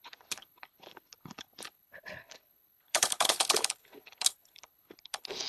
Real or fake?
fake